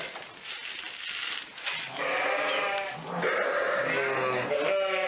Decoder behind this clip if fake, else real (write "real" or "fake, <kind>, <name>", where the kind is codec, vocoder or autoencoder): real